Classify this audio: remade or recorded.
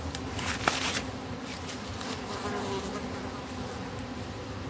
recorded